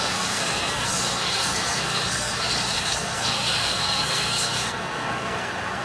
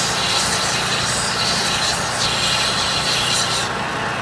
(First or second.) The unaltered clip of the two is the second